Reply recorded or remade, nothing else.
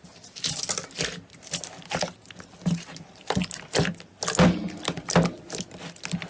recorded